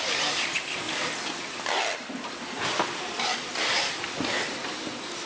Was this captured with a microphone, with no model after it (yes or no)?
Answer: yes